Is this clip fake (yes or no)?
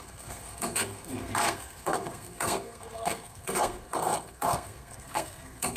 yes